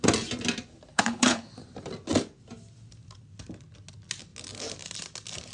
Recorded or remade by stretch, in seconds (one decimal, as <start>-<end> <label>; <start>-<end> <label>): 0.0-0.9 recorded; 0.9-1.5 remade; 1.5-5.5 recorded